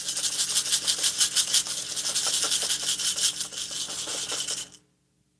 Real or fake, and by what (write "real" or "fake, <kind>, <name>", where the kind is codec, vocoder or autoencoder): real